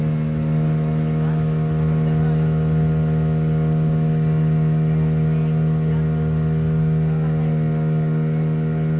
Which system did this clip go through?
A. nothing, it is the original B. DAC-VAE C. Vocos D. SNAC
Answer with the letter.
A